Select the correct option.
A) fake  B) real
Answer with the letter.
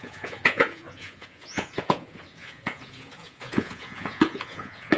A